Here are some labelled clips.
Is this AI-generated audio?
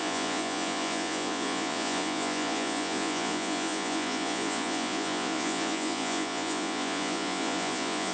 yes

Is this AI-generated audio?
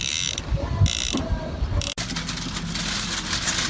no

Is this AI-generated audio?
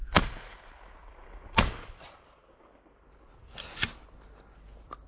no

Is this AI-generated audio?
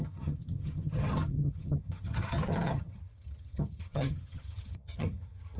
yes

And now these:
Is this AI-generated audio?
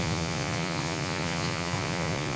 yes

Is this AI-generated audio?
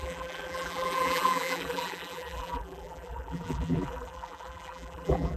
yes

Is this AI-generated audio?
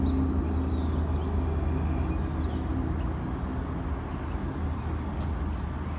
no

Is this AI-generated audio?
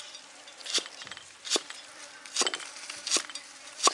no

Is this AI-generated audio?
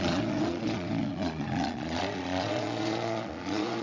yes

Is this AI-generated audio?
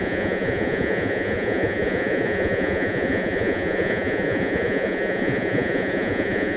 yes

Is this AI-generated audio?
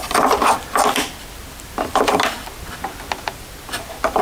no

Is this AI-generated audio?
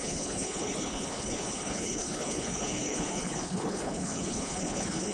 yes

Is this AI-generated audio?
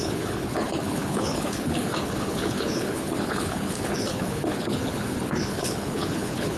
yes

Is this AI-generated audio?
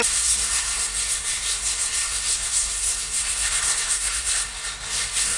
yes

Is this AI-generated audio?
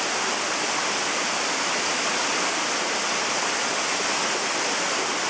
no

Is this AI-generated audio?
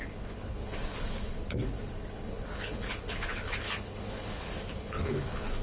yes